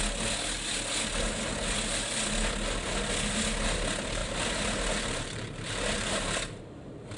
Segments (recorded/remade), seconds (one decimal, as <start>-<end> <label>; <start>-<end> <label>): 0.0-4.2 recorded; 4.2-6.6 remade; 6.6-7.2 recorded